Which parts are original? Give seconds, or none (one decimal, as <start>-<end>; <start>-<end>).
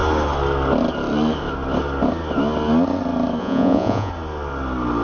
0.0-3.4; 4.1-5.0